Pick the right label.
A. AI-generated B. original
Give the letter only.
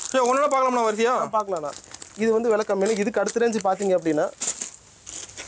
B